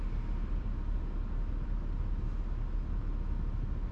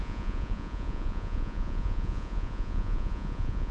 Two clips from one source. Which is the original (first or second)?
first